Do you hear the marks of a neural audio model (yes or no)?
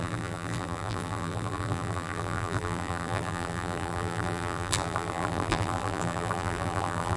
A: yes